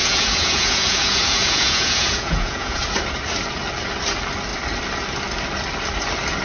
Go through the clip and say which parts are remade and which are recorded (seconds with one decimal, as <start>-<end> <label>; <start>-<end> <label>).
0.0-2.8 remade; 2.8-6.4 recorded